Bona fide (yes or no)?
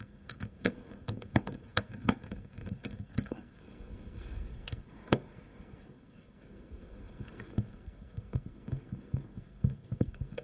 no